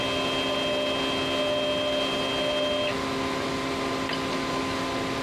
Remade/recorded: recorded